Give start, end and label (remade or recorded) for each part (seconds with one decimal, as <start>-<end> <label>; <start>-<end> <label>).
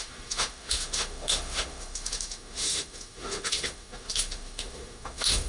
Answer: 0.0-5.5 remade